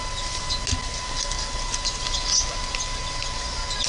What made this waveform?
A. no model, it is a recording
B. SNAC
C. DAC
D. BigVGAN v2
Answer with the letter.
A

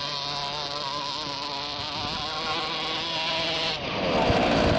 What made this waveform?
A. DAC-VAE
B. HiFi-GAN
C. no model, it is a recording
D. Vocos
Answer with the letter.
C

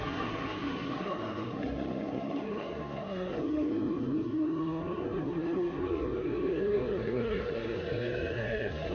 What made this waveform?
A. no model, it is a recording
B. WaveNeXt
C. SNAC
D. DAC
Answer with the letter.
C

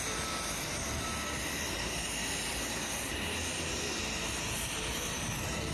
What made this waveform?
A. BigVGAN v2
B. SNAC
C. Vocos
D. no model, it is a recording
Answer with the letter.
D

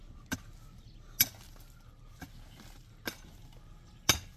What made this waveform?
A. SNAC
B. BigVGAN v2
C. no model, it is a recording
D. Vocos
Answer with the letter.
C